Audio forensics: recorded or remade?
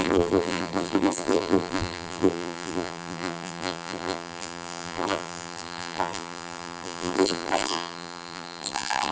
remade